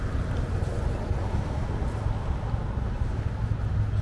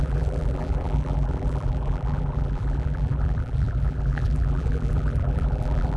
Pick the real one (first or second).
first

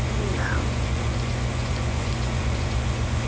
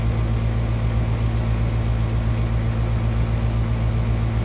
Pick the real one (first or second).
second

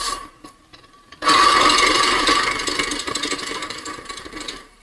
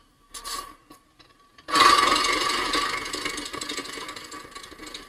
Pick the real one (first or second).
second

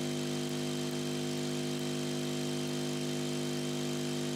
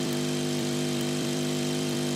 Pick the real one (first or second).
first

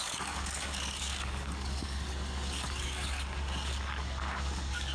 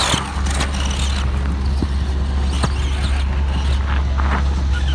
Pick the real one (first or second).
second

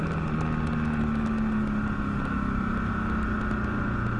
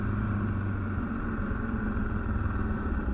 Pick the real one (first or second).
first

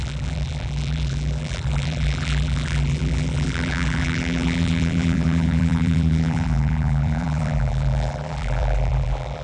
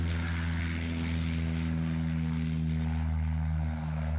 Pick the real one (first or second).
second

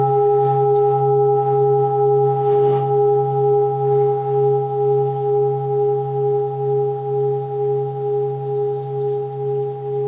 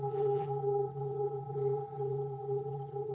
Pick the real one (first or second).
first